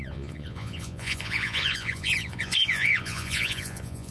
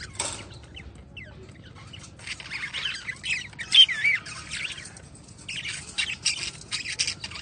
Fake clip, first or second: first